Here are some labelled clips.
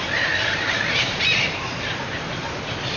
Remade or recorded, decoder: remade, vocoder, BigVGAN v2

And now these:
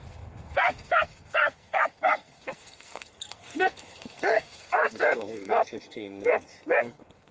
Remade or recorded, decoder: remade, codec, SNAC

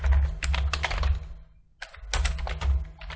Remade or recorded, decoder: recorded